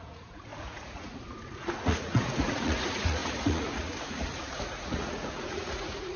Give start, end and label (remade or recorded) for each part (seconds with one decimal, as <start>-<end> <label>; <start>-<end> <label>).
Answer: 0.0-6.2 remade